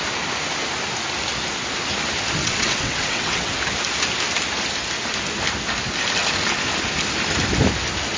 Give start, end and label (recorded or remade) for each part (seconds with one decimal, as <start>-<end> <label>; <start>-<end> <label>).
0.0-2.4 recorded; 2.4-3.5 remade; 3.5-8.2 recorded